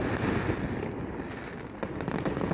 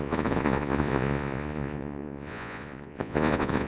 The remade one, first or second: second